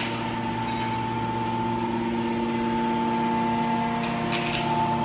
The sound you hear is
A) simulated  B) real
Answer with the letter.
B